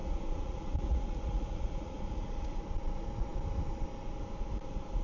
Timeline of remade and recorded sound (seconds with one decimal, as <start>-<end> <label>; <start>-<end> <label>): 0.0-2.6 remade; 2.6-5.0 recorded